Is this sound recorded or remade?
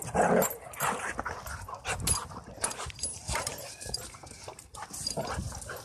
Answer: recorded